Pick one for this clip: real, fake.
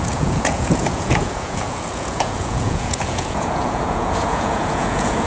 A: fake